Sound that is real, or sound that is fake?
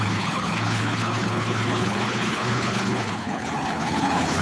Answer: fake